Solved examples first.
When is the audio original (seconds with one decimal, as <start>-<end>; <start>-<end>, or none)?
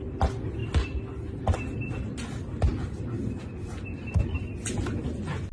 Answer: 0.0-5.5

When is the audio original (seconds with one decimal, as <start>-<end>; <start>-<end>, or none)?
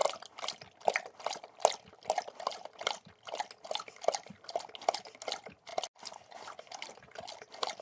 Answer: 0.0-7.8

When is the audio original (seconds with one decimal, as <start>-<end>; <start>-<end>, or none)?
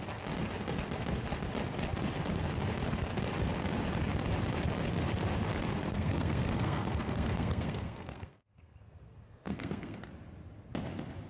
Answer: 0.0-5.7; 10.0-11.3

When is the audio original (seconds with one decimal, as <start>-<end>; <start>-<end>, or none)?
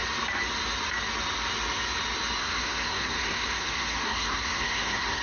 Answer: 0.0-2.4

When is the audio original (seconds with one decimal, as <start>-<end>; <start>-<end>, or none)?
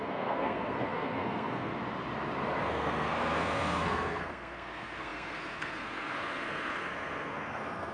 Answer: 1.7-2.6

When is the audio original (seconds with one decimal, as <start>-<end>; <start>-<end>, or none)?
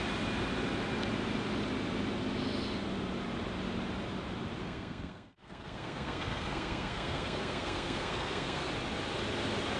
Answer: 0.0-4.6; 8.7-9.8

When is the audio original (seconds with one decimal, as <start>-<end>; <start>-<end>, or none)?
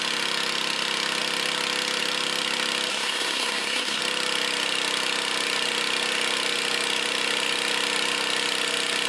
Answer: 0.0-2.9; 4.0-9.1